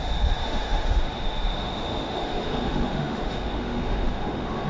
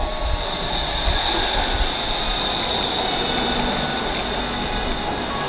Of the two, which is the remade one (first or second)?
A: first